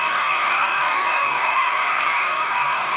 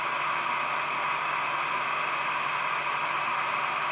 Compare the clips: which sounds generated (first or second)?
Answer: first